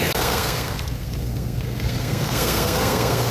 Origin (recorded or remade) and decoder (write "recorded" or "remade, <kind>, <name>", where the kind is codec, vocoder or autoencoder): remade, codec, SNAC